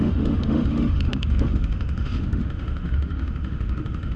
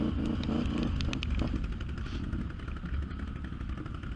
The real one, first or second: second